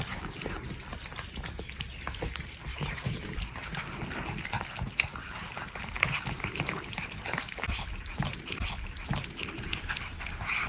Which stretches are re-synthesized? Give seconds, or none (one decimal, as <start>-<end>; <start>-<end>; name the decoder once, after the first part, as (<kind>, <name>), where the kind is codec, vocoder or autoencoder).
2.7-3.8 (vocoder, BigVGAN v2); 5.2-8.7

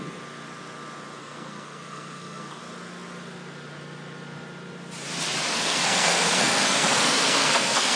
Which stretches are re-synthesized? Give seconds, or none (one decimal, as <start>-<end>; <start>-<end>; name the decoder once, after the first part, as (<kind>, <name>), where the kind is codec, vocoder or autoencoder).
1.2-2.6 (codec, SNAC); 5.5-8.0

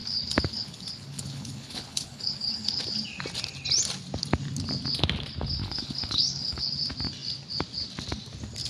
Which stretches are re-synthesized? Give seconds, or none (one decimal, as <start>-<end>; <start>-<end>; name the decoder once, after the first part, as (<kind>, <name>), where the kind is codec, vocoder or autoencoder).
0.0-2.8 (codec, HILCodec); 5.6-6.7

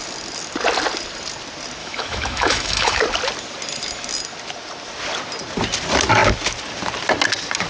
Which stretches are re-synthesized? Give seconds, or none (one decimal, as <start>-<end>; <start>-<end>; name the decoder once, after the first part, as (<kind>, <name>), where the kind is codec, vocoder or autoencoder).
1.8-3.0 (autoencoder, DAC-VAE)

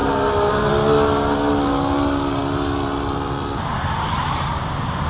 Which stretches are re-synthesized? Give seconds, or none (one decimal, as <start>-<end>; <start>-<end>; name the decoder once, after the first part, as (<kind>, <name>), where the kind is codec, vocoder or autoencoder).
none

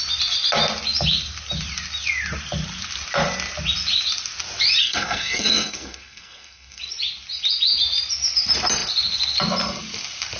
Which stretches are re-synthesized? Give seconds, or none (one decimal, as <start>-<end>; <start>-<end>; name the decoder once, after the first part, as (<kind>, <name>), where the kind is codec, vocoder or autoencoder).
4.8-6.8 (codec, SNAC)